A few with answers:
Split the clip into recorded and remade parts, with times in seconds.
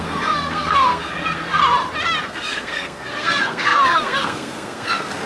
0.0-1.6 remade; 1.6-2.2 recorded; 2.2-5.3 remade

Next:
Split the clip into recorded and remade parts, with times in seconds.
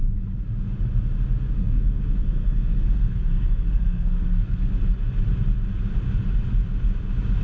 0.0-1.6 recorded; 1.6-4.7 remade; 4.7-7.4 recorded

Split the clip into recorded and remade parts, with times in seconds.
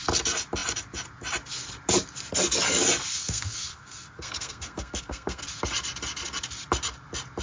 0.0-3.1 recorded; 3.1-5.4 remade; 5.4-7.4 recorded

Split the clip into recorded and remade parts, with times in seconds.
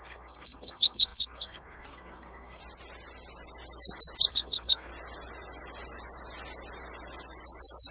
0.0-2.6 remade; 2.6-4.3 recorded; 4.3-4.9 remade; 4.9-7.9 recorded